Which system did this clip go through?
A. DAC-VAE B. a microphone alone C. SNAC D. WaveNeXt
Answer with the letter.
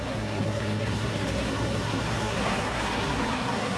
C